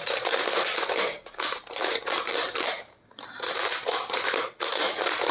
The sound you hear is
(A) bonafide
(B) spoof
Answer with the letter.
B